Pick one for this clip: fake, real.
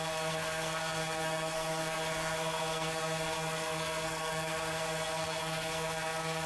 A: fake